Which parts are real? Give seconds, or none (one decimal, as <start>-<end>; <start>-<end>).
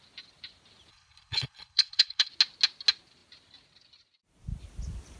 0.0-0.9; 2.3-5.2